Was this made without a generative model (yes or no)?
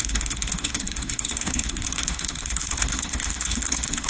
no